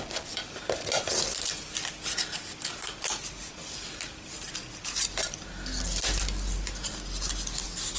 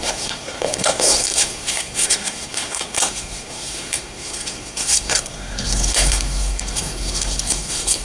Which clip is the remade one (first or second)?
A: second